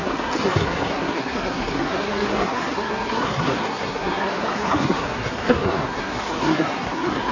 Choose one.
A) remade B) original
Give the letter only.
A